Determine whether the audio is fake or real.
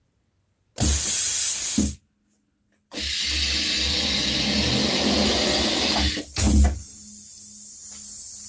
real